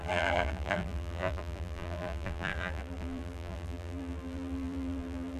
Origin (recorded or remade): remade